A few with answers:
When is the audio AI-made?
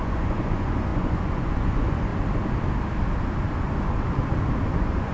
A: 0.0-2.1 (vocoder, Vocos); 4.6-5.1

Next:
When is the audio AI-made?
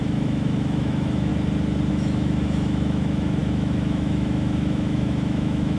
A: 0.0-1.3 (autoencoder, DAC-VAE); 1.9-5.8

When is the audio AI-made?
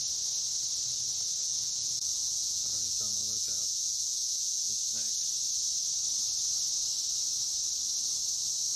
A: 1.4-4.8 (vocoder, Vocos)